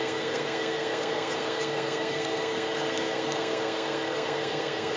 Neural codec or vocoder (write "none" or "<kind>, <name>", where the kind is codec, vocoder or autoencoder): codec, SNAC